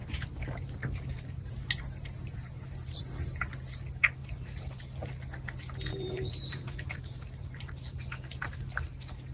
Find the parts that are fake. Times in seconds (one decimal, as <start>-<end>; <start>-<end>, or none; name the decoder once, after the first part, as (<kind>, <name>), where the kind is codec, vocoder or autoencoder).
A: 0.0-3.0 (vocoder, BigVGAN v2); 4.2-4.8; 5.9-8.0